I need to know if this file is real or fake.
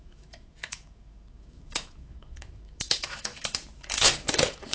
fake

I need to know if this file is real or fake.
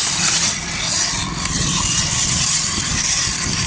real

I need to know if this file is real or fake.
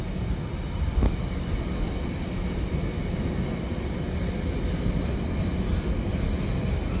real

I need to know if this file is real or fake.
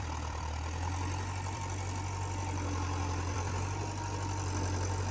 fake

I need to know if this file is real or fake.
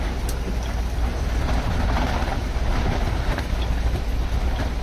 real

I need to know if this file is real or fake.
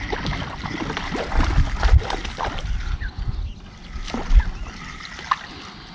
real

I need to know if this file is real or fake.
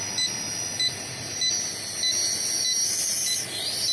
real